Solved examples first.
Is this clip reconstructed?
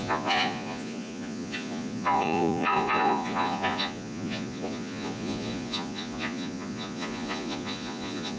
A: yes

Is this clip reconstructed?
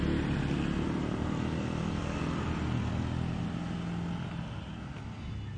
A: no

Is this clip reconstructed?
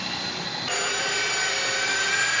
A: no